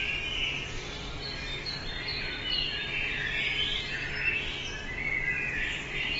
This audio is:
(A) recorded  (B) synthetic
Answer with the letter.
A